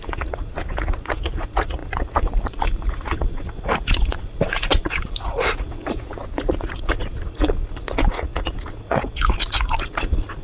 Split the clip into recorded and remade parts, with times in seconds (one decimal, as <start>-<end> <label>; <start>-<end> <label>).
0.0-10.4 remade